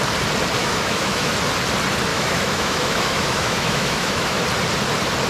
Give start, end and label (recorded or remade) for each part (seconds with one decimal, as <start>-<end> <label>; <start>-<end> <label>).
0.0-0.6 recorded; 0.6-1.3 remade; 1.3-2.1 recorded; 2.1-4.4 remade; 4.4-5.3 recorded